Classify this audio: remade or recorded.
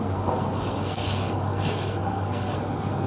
remade